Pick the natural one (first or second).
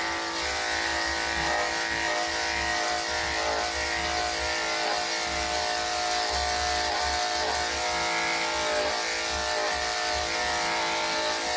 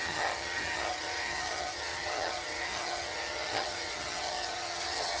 first